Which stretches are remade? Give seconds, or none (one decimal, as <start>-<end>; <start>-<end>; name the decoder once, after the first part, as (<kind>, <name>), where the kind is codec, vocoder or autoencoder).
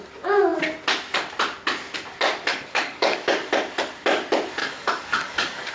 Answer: 2.5-3.5 (codec, DAC); 4.6-5.7